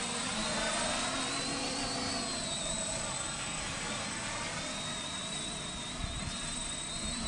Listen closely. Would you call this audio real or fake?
real